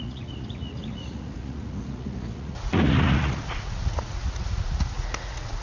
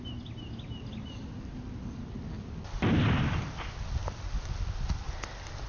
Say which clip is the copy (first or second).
first